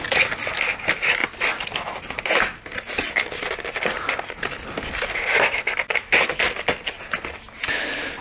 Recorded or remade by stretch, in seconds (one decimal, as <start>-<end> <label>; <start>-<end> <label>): 0.0-8.2 recorded

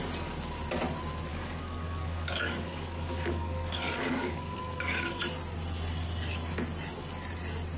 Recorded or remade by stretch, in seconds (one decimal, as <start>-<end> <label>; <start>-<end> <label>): 0.0-1.3 recorded; 1.3-5.2 remade; 5.2-7.8 recorded

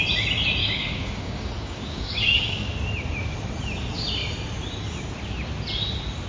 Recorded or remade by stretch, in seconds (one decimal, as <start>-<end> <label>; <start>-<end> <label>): 0.0-0.6 recorded; 0.6-2.7 remade; 2.7-6.3 recorded

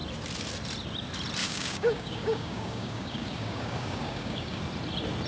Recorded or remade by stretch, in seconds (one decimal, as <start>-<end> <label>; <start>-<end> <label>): 0.0-1.4 recorded; 1.4-4.6 remade; 4.6-5.3 recorded